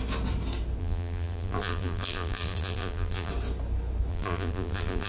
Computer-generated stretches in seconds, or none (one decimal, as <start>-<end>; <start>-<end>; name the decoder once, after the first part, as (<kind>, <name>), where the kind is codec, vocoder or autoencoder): 0.8-3.3 (vocoder, BigVGAN v2); 4.1-5.1